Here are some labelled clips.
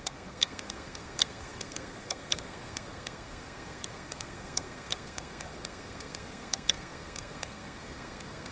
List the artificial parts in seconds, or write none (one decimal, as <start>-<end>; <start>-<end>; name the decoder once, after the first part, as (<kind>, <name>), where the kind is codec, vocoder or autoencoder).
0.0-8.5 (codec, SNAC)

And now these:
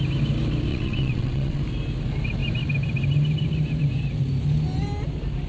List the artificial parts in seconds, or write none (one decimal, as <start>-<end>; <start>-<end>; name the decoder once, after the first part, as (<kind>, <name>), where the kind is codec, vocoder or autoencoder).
0.7-1.6 (vocoder, WaveNeXt)

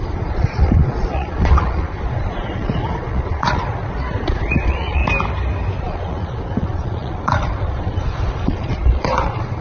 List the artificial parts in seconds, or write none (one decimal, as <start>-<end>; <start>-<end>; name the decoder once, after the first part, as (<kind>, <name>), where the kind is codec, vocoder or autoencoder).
0.0-5.0 (vocoder, Vocos); 5.8-9.6